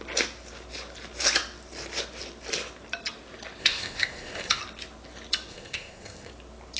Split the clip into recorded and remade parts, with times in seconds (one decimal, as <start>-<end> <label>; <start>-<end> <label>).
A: 0.0-3.6 recorded; 3.6-4.6 remade; 4.6-5.5 recorded; 5.5-6.3 remade; 6.3-6.8 recorded